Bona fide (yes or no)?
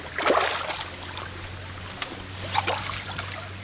yes